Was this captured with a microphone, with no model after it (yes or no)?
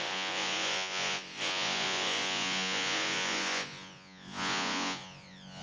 no